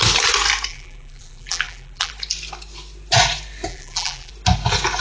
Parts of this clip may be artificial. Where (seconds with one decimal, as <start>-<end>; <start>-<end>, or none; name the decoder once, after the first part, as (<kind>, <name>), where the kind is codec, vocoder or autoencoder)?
0.7-2.1 (vocoder, BigVGAN v2); 3.7-4.3